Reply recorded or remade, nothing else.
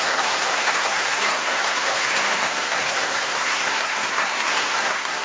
remade